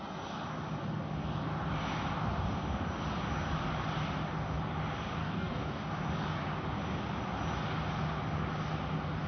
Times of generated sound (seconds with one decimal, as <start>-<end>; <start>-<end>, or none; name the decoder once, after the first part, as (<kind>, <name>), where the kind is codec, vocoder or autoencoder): 5.2-5.9 (codec, DAC)